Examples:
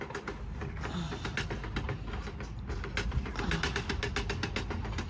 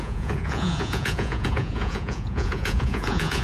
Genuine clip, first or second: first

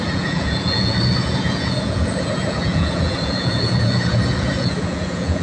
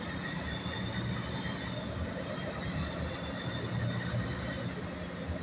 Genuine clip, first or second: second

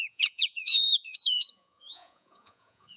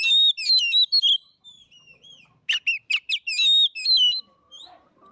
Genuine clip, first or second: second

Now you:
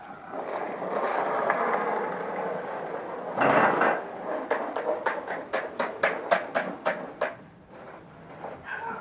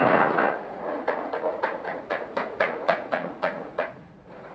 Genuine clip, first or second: first